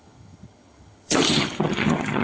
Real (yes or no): no